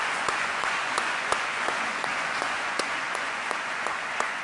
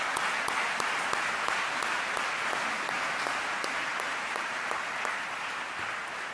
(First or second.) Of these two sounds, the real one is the second